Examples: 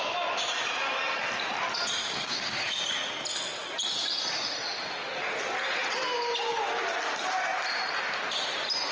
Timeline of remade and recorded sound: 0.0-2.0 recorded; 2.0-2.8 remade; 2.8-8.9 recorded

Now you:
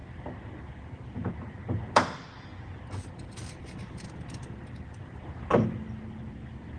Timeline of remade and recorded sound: 0.0-6.8 recorded